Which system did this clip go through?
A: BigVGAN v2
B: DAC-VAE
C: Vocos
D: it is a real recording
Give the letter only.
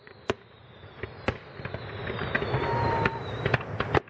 D